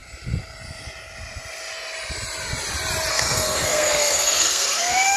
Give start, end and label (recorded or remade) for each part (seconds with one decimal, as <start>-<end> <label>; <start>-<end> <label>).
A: 0.0-3.1 recorded; 3.1-5.2 remade